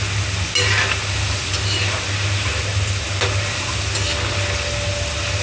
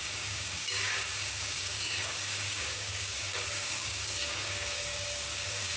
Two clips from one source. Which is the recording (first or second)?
first